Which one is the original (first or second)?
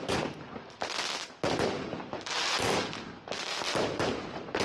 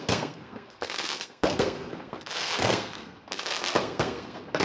first